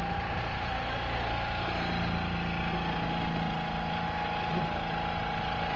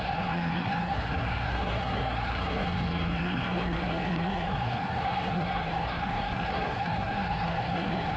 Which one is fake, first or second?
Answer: second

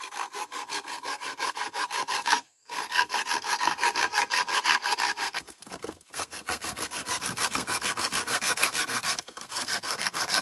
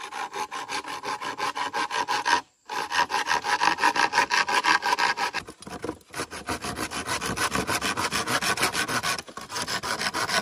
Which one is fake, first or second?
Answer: first